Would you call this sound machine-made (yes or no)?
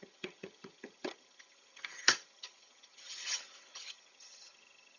yes